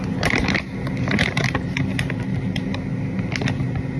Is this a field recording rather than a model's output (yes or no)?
yes